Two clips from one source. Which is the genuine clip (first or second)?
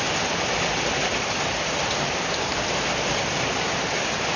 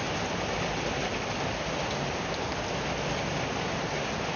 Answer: second